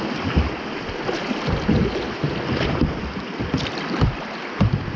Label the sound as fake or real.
real